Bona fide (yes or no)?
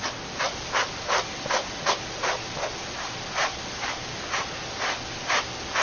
yes